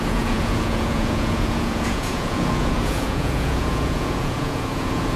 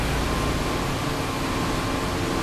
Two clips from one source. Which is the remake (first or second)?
first